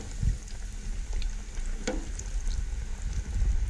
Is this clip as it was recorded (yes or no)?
yes